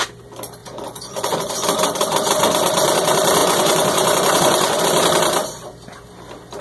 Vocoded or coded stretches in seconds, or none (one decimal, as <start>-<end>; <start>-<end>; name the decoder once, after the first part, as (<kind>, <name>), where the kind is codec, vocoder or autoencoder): 0.6-1.5 (vocoder, Vocos); 3.4-4.8